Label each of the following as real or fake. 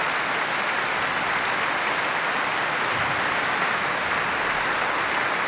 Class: real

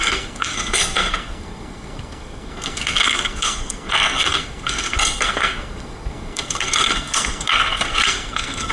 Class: fake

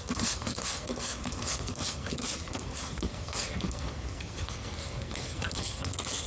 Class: fake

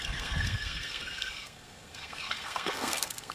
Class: fake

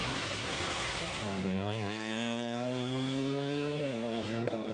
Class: fake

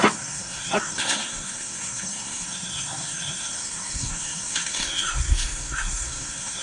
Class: fake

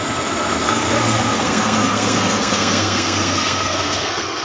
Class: fake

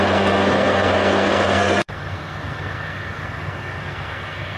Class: fake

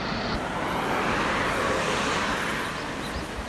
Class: real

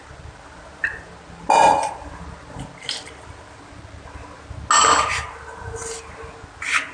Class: real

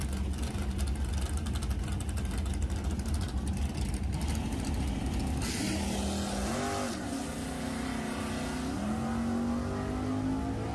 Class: real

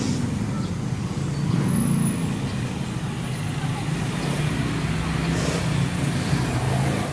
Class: real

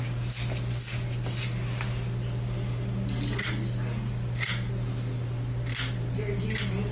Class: real